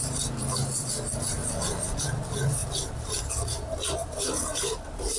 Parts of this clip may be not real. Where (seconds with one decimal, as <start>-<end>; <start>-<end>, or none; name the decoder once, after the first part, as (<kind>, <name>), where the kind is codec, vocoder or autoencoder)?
0.0-5.2 (vocoder, BigVGAN v2)